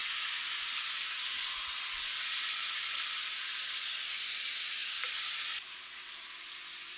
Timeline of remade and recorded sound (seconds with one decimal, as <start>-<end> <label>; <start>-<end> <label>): 0.0-7.0 recorded

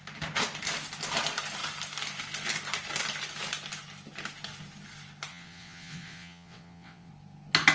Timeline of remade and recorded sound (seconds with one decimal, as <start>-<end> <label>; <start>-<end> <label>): 0.0-5.3 recorded; 5.3-7.1 remade; 7.1-7.7 recorded

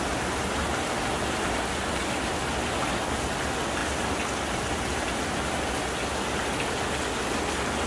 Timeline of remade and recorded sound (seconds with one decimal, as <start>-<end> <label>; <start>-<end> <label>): 0.0-7.9 recorded